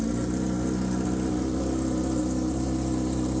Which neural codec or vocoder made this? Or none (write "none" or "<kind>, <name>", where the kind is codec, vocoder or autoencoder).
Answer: none